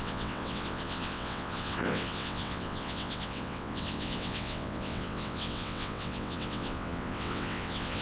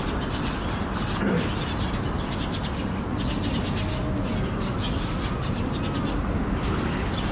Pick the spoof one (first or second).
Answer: first